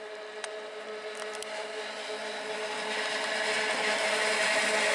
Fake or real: real